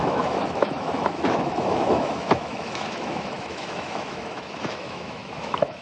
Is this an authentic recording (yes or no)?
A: no